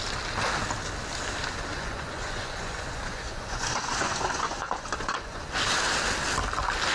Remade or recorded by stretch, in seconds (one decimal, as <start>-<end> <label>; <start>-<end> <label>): 0.0-1.7 recorded; 1.7-5.4 remade; 5.4-6.9 recorded